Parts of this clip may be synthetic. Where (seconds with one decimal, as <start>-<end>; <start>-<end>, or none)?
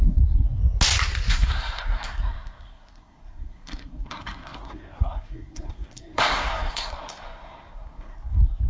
0.0-0.6; 1.3-8.7